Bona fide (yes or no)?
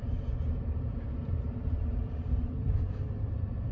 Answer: no